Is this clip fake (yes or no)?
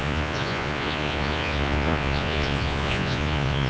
yes